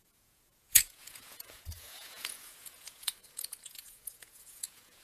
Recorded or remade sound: remade